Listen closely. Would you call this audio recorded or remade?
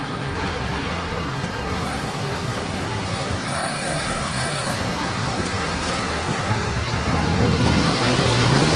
remade